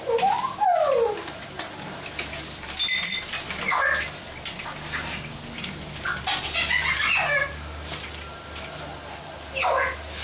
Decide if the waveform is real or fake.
real